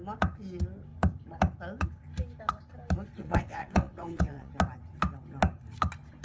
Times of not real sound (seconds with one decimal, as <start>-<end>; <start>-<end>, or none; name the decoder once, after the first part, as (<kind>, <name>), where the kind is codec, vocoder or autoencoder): 3.2-4.5 (vocoder, WaveNeXt)